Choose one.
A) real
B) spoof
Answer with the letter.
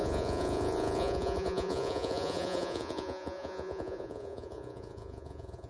B